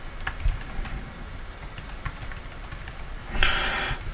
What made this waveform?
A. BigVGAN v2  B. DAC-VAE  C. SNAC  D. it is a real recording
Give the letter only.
D